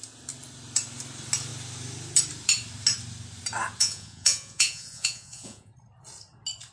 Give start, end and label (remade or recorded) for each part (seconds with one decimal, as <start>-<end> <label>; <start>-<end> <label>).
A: 0.0-3.8 recorded; 3.8-5.7 remade; 5.7-6.7 recorded